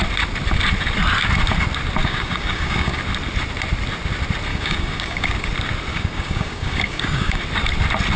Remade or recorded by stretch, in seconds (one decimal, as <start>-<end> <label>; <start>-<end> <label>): 0.0-2.0 recorded; 2.0-3.0 remade; 3.0-4.5 recorded; 4.5-5.5 remade; 5.5-5.9 recorded; 5.9-7.4 remade; 7.4-8.2 recorded